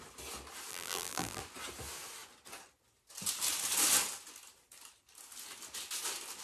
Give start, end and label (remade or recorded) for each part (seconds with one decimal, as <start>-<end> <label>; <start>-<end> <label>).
0.0-0.7 recorded; 0.7-1.4 remade; 1.4-6.4 recorded